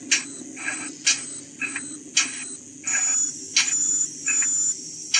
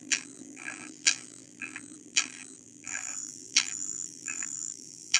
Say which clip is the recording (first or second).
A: first